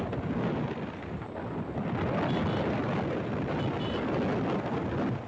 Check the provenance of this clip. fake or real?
real